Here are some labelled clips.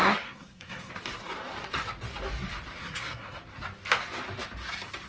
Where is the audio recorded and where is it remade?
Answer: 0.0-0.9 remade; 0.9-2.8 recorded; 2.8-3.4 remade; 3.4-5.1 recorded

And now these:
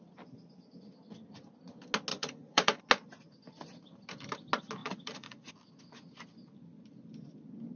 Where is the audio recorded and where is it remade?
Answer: 0.0-2.1 recorded; 2.1-2.8 remade; 2.8-4.8 recorded; 4.8-5.5 remade; 5.5-7.8 recorded